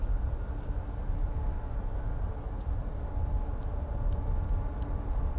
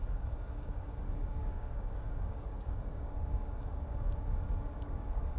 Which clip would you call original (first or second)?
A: first